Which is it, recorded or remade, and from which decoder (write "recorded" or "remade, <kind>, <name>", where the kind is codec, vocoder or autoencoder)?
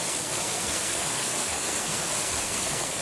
remade, codec, SNAC